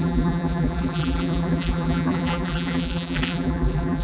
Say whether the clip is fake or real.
fake